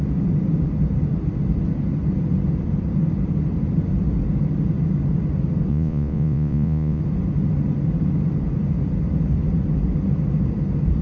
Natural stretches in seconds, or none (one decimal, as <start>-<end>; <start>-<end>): 0.0-5.7; 7.0-11.0